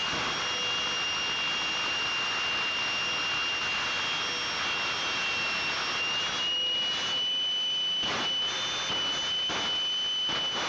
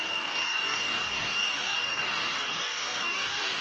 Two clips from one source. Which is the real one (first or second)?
first